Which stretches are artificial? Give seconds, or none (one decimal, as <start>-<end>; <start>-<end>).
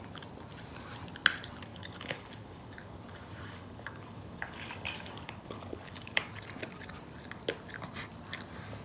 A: 1.7-6.3